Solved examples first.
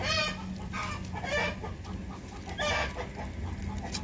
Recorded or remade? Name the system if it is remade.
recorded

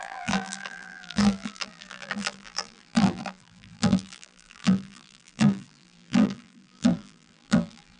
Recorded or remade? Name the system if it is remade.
remade, vocoder, BigVGAN v2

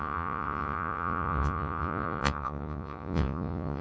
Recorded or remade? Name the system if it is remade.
remade, vocoder, Vocos